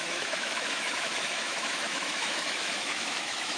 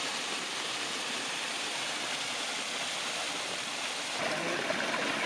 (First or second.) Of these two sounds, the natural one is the second